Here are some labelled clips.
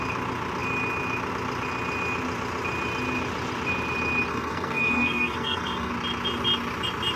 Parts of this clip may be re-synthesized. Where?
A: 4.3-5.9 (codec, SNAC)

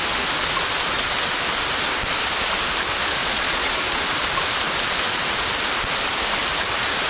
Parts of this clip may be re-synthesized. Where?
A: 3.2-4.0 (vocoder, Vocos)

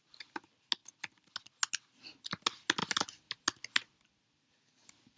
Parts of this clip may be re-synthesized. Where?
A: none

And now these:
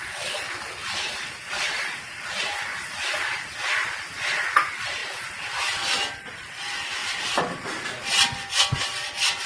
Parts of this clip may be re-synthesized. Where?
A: 0.8-1.9 (vocoder, BigVGAN v2); 2.7-4.1; 7.0-7.8

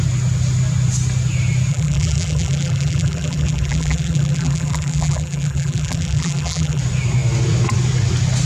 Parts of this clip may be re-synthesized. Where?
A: 1.7-6.8 (vocoder, BigVGAN v2)

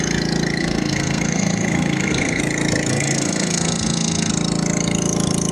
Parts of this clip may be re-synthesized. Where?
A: 0.6-2.4 (codec, SNAC); 2.9-4.3

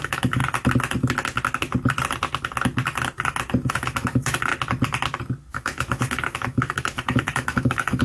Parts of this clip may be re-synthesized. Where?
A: 0.0-0.4 (autoencoder, DAC-VAE); 3.7-4.5; 5.5-8.0

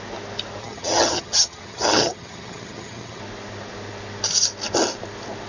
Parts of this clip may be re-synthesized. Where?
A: 0.6-3.2 (vocoder, HiFi-GAN)